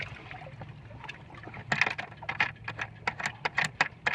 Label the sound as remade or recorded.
recorded